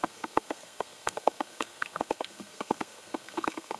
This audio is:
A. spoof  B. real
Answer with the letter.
A